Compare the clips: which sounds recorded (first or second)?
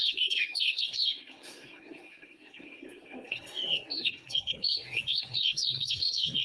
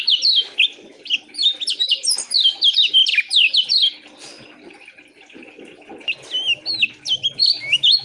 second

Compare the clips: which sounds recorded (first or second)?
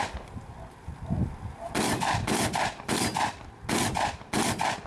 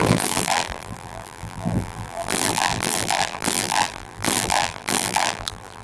first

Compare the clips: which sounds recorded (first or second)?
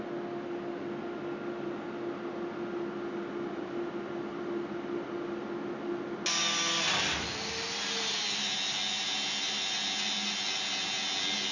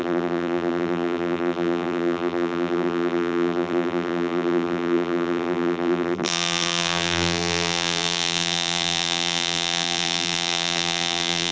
first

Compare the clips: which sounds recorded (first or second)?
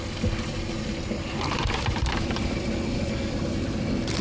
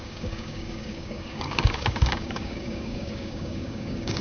first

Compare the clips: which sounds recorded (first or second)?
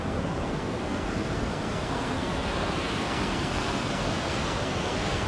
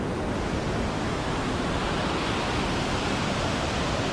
second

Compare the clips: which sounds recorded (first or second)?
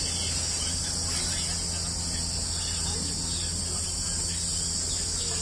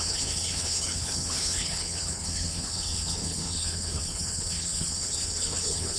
first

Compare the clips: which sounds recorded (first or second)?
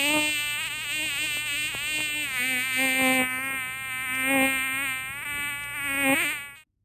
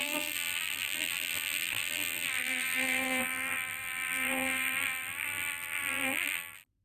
first